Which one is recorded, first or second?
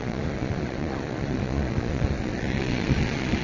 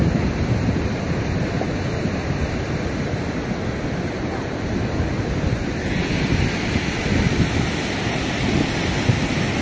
second